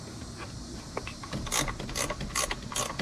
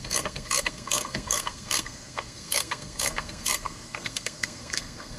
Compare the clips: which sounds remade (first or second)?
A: second